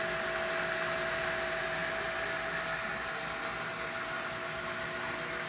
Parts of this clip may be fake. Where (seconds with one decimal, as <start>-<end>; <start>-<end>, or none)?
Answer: none